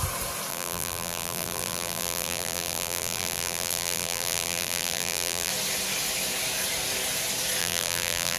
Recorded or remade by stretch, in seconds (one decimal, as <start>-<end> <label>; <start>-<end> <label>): 0.0-0.5 recorded; 0.5-5.5 remade; 5.5-7.6 recorded; 7.6-8.4 remade